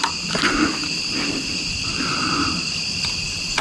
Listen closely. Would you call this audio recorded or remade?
remade